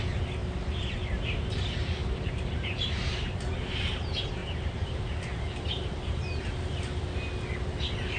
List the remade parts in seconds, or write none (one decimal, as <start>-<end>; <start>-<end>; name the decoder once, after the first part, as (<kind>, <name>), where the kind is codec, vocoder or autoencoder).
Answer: 2.0-3.1 (vocoder, BigVGAN v2); 4.4-6.5